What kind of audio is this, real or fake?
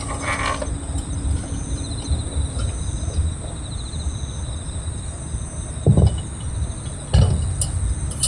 real